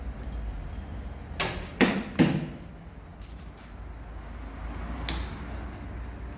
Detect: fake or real real